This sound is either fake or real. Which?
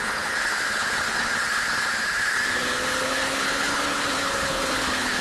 fake